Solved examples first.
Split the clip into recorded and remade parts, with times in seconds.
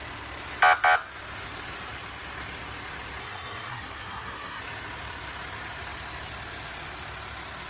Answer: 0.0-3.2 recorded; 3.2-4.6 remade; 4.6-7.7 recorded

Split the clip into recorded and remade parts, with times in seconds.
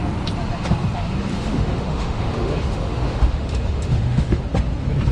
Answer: 0.0-1.3 recorded; 1.3-4.4 remade; 4.4-5.1 recorded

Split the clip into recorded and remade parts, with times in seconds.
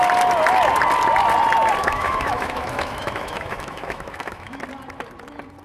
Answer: 0.0-1.8 recorded; 1.8-4.6 remade; 4.6-5.6 recorded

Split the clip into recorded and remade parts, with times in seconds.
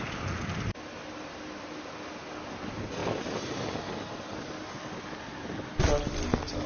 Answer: 0.0-6.7 recorded